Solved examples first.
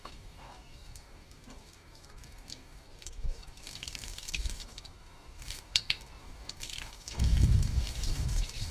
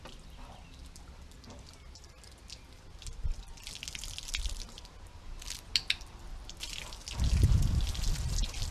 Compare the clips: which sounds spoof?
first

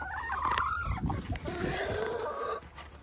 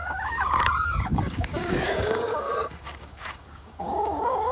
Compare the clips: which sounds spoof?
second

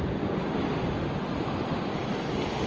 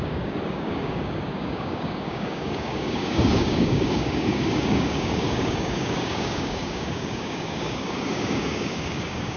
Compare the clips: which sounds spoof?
second